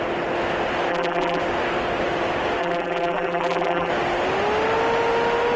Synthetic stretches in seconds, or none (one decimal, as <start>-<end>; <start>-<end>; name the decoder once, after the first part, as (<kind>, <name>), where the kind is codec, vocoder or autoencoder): 0.9-1.4 (vocoder, BigVGAN v2); 2.6-3.9